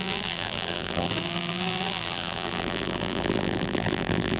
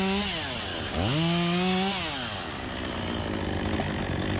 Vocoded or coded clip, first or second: first